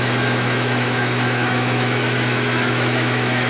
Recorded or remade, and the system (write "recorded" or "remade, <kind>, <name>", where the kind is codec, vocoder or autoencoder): remade, autoencoder, DAC-VAE